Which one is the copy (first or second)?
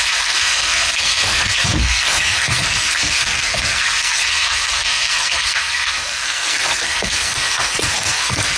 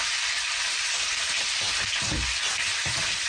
first